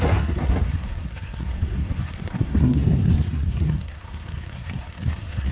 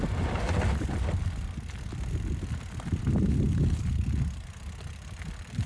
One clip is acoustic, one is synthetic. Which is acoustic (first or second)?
second